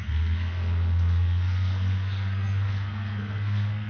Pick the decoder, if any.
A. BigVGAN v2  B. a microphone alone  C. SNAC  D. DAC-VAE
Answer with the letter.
C